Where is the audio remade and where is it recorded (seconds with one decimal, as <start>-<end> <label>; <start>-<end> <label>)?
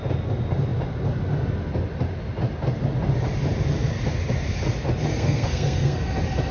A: 0.0-5.1 recorded; 5.1-6.0 remade; 6.0-6.5 recorded